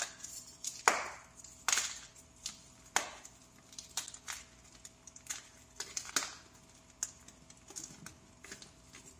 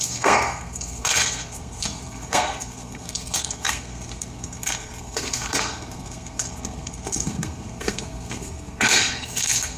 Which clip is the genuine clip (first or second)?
first